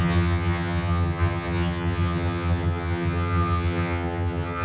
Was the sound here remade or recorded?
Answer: remade